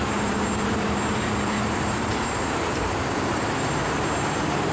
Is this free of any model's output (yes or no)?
no